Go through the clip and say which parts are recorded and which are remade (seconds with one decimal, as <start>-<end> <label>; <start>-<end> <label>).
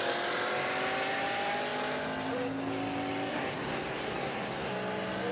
0.0-3.3 recorded; 3.3-4.7 remade; 4.7-5.3 recorded